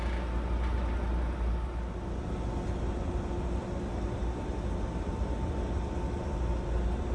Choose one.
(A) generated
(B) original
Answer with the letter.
B